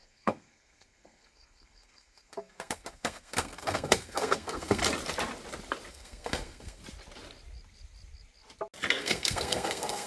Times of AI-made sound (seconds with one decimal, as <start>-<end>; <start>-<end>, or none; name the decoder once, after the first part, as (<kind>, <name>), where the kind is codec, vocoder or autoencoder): 0.0-4.8 (codec, SNAC); 5.9-6.8; 9.0-10.1